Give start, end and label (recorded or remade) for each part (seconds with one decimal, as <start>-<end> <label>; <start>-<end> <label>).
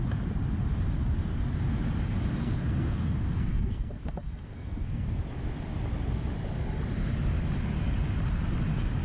0.0-2.4 recorded; 2.4-5.2 remade; 5.2-9.0 recorded